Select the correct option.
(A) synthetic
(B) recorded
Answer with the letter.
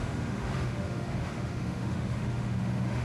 A